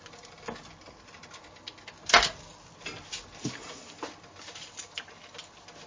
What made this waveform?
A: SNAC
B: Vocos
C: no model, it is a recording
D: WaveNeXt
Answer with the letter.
C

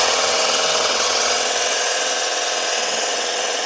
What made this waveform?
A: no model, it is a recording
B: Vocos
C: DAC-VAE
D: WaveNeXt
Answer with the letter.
D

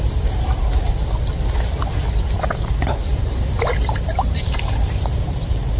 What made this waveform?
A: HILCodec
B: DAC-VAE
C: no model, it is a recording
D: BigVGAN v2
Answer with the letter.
C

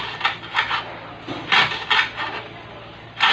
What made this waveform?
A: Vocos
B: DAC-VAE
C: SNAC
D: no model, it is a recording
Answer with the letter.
D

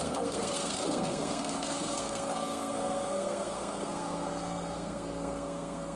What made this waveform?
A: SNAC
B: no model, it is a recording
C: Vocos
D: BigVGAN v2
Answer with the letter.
A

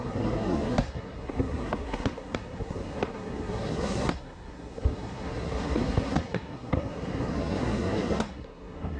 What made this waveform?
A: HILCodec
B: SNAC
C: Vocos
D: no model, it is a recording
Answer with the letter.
B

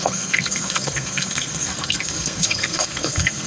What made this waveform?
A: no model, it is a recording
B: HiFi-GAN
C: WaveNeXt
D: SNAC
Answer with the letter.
D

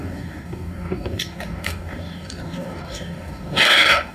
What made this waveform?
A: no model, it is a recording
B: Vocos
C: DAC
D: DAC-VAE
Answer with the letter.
C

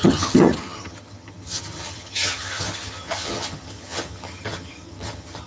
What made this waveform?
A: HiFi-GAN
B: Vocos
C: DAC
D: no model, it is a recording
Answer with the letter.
A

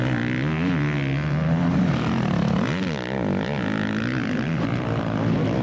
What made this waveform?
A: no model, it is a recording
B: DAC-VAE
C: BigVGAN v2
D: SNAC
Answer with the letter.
A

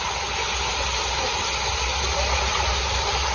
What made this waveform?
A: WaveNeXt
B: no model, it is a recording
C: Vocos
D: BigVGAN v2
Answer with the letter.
B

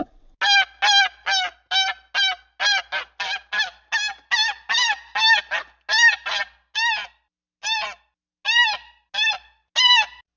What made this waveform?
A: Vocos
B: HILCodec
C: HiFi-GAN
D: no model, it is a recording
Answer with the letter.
D